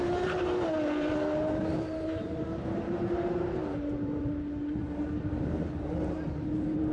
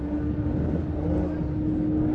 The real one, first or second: second